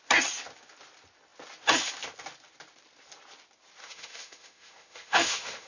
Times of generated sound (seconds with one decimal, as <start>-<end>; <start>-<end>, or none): 3.8-5.7